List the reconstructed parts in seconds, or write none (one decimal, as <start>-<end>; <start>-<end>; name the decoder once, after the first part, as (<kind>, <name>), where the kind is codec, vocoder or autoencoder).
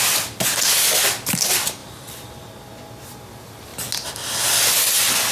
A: none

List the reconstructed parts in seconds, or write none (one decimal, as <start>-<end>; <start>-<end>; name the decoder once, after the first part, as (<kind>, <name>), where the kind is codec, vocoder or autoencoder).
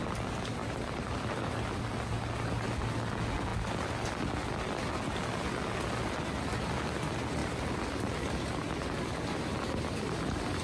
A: 0.6-1.8 (vocoder, BigVGAN v2); 7.4-9.0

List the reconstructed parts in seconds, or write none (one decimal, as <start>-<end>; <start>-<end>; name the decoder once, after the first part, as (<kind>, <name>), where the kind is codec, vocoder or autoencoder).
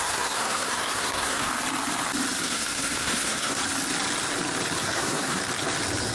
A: 0.0-1.5 (codec, SNAC); 2.4-3.6; 4.8-5.4